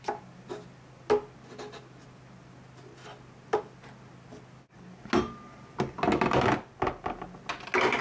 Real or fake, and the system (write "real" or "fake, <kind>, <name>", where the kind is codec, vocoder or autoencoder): real